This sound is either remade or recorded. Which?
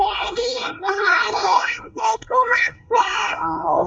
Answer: remade